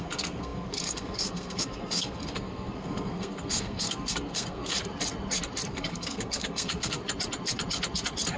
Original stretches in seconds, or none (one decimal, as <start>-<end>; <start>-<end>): 4.7-5.7; 7.0-8.4